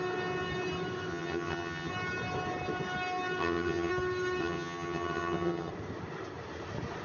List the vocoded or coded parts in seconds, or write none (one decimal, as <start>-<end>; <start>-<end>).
1.1-1.9; 3.4-3.9; 4.4-5.7